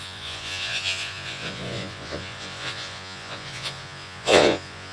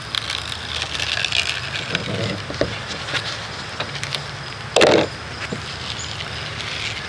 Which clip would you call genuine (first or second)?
second